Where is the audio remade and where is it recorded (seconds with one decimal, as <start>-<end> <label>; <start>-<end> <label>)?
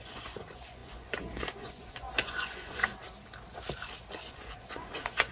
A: 0.0-2.9 remade; 2.9-4.2 recorded; 4.2-5.3 remade